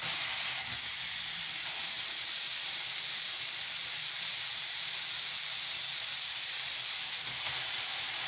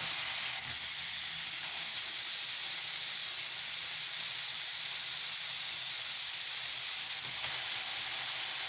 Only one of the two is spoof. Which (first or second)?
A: first